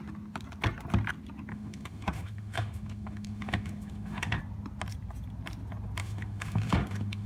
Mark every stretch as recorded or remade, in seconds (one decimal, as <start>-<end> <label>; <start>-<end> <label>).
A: 0.0-1.5 recorded; 1.5-4.4 remade; 4.4-6.0 recorded; 6.0-7.3 remade